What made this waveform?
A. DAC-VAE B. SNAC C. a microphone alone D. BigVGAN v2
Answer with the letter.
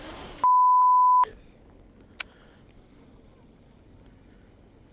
C